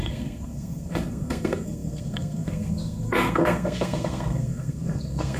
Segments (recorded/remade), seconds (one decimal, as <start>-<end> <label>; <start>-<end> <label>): 0.0-5.4 remade